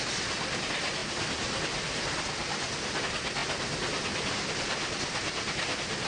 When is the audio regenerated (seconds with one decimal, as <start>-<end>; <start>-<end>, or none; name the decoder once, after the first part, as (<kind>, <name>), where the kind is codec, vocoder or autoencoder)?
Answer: none